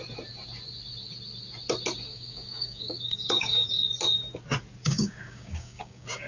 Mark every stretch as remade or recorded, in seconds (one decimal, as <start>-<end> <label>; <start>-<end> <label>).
0.0-2.1 recorded; 2.1-3.7 remade; 3.7-4.8 recorded; 4.8-6.3 remade